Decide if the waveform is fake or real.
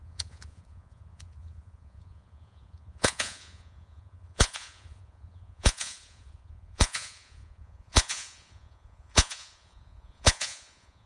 fake